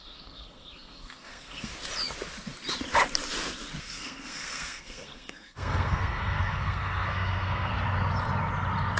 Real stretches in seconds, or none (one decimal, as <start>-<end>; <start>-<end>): 1.7-3.8; 7.7-9.0